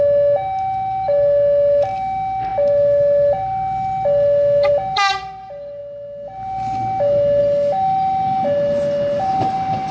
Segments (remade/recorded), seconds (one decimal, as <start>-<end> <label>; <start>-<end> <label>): 0.0-9.9 recorded

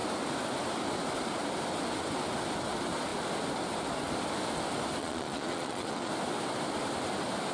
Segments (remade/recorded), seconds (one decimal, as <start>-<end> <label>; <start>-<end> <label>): 0.0-5.0 recorded; 5.0-6.1 remade; 6.1-7.5 recorded